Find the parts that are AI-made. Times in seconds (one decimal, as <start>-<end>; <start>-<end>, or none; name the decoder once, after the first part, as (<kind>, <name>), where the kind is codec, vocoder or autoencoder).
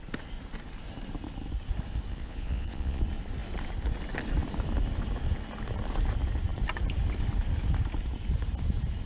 2.1-3.0 (vocoder, Vocos)